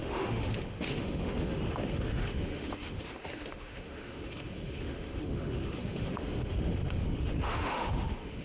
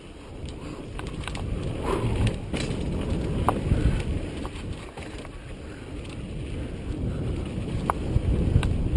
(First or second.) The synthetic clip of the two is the first